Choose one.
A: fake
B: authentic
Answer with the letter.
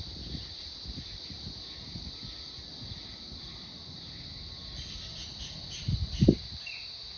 B